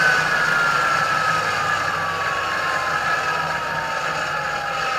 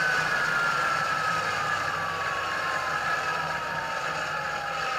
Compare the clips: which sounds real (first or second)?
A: first